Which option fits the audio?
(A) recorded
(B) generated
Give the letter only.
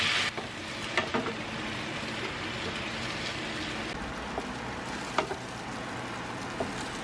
A